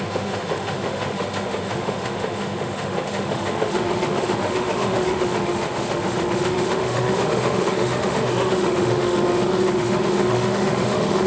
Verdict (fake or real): fake